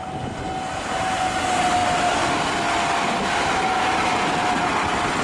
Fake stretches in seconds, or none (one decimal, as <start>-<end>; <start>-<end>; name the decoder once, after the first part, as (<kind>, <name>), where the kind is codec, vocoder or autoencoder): none